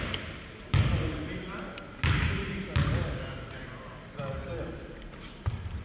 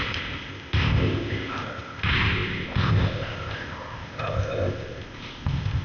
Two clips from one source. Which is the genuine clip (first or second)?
first